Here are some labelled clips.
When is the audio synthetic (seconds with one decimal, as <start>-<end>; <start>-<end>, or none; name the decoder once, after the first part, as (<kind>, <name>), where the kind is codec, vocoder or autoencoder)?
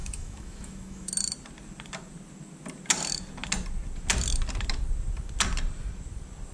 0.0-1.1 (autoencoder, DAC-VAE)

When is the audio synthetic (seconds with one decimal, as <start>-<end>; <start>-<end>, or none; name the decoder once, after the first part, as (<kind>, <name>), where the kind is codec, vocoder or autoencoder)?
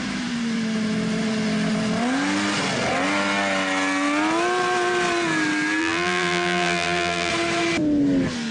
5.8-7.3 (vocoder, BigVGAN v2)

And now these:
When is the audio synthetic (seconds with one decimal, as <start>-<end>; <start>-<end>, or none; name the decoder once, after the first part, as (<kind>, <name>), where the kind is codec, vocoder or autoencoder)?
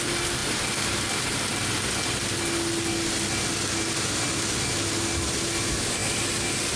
none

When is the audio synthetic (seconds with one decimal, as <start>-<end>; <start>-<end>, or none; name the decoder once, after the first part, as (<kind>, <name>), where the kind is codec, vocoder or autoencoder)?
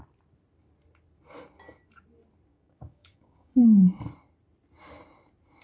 2.5-4.0 (codec, DAC)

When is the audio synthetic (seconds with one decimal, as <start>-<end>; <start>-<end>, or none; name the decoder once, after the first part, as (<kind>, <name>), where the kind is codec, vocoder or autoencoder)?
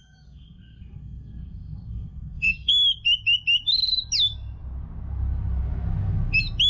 0.0-2.7 (codec, SNAC)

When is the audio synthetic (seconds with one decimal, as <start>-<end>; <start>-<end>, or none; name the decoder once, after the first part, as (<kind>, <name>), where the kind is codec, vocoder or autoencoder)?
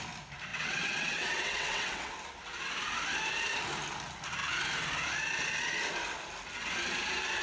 0.5-2.1 (vocoder, WaveNeXt)